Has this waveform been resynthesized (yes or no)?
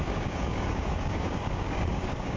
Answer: yes